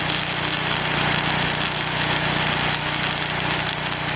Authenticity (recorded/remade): recorded